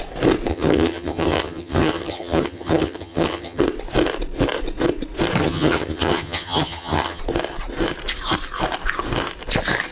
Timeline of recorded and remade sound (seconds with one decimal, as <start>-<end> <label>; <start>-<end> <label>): 0.0-0.5 recorded; 0.5-3.6 remade; 3.6-5.4 recorded; 5.4-7.2 remade; 7.2-9.9 recorded